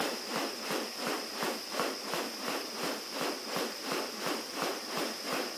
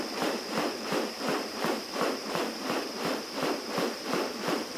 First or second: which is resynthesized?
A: second